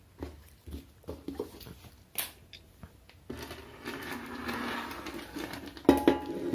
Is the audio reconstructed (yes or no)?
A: no